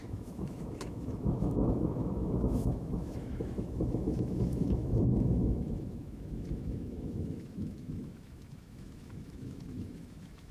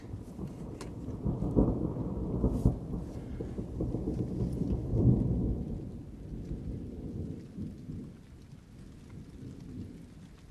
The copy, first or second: first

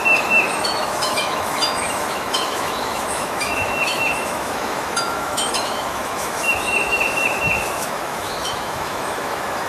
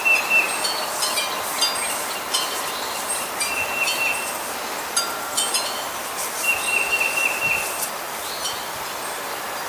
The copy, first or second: first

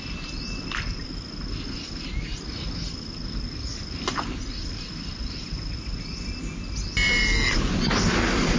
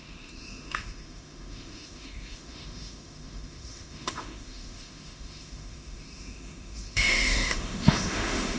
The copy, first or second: second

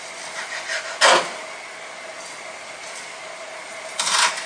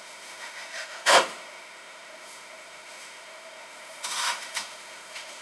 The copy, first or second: second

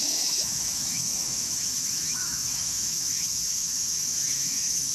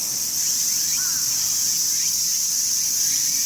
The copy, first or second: first